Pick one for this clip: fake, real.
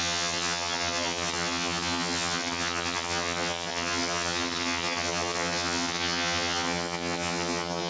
fake